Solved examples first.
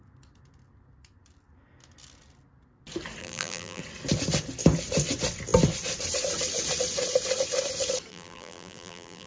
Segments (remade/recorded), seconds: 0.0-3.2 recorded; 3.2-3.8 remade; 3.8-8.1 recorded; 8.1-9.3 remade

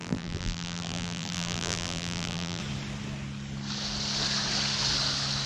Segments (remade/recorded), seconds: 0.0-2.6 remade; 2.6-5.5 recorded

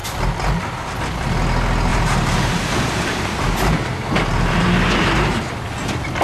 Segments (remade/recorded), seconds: 0.0-1.9 recorded; 1.9-5.4 remade; 5.4-6.2 recorded

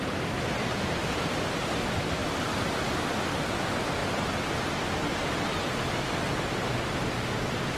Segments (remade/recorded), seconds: 0.0-2.2 recorded; 2.2-3.5 remade; 3.5-7.8 recorded

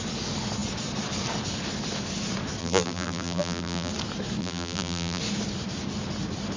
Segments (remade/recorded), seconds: 0.0-2.6 recorded; 2.6-3.9 remade; 3.9-4.4 recorded; 4.4-5.2 remade; 5.2-6.6 recorded

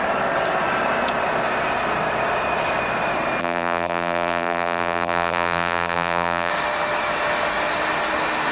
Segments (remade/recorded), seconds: 0.0-3.4 recorded; 3.4-6.5 remade; 6.5-8.5 recorded

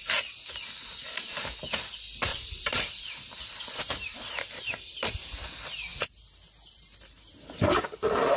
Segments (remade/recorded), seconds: 0.0-2.3 recorded; 2.3-5.5 remade; 5.5-5.9 recorded; 5.9-7.3 remade; 7.3-8.4 recorded

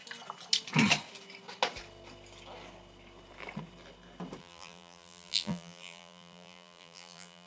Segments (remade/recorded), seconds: 0.0-4.4 recorded; 4.4-7.5 remade